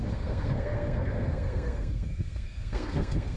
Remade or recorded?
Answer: remade